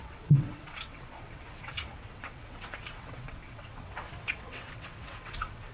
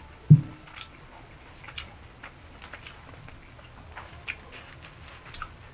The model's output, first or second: first